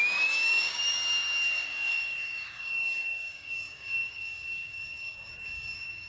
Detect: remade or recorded remade